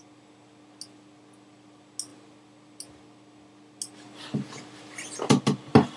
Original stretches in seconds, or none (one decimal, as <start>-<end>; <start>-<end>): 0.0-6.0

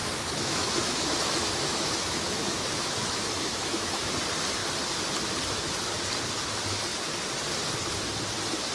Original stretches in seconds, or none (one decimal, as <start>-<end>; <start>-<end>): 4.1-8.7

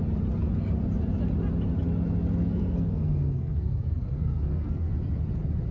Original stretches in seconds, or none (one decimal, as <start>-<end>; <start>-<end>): 0.0-2.4; 4.9-5.7

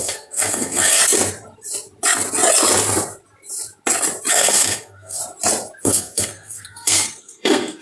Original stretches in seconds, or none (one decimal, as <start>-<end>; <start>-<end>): 1.0-4.3; 5.2-5.8

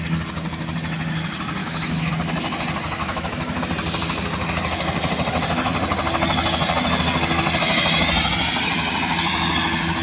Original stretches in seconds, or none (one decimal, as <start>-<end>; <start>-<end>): 0.0-1.6; 2.1-3.0; 3.6-10.0